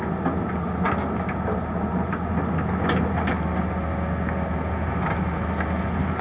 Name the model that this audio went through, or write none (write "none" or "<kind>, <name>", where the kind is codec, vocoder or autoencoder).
none